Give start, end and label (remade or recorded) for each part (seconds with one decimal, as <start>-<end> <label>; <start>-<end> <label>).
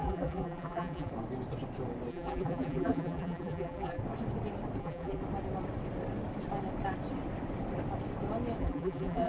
0.0-1.1 remade; 1.1-2.1 recorded; 2.1-4.0 remade; 4.0-4.8 recorded; 4.8-5.2 remade; 5.2-8.6 recorded; 8.6-9.3 remade